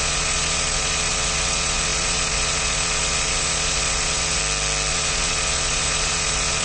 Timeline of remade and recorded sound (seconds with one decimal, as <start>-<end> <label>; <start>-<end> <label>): 0.0-4.4 remade; 4.4-4.9 recorded; 4.9-6.6 remade

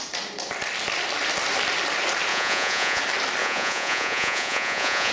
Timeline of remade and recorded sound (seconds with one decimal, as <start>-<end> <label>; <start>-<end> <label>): 0.0-2.3 recorded; 2.3-3.0 remade; 3.0-3.4 recorded; 3.4-5.1 remade

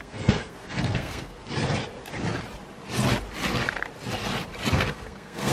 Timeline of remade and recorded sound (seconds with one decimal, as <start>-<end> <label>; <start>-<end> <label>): 0.0-1.4 remade; 1.4-4.7 recorded; 4.7-5.5 remade

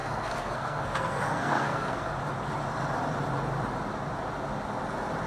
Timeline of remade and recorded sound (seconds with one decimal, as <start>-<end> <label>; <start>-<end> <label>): 0.0-2.1 remade; 2.1-5.3 recorded

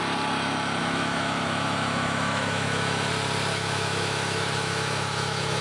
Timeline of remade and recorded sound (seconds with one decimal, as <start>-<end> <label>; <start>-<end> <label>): 0.0-0.8 recorded; 0.8-3.1 remade; 3.1-3.5 recorded; 3.5-5.6 remade

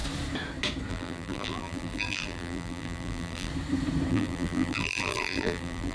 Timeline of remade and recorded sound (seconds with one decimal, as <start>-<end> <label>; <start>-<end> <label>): 0.0-0.9 recorded; 0.9-3.5 remade; 3.5-4.1 recorded; 4.1-5.9 remade

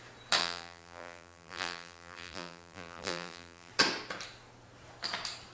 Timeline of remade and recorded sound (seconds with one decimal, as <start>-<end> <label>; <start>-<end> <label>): 0.0-0.4 recorded; 0.4-3.7 remade; 3.7-5.5 recorded